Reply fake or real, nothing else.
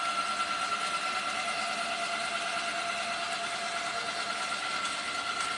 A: real